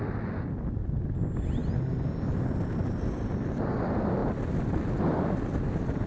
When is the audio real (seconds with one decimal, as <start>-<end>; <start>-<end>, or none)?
0.0-6.1